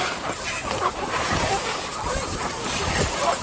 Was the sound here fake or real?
real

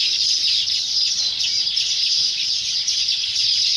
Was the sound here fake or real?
fake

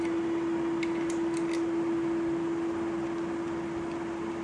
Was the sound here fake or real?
real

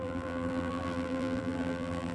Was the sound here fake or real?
fake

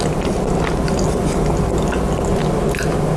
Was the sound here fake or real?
real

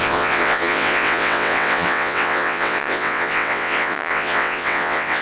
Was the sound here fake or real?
fake